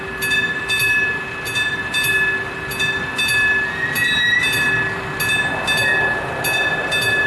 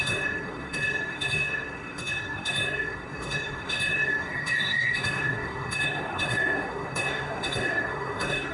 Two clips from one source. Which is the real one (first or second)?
first